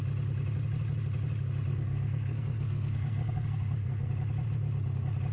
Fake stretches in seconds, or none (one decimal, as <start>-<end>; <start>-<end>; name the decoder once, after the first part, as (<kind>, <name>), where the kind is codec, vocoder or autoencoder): 1.7-4.1 (codec, SNAC)